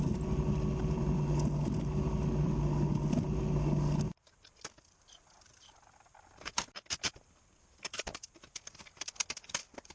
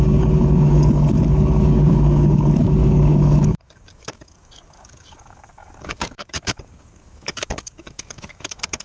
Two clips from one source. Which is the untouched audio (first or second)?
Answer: first